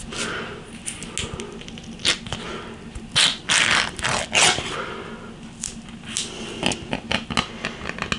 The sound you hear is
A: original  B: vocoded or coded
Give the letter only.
A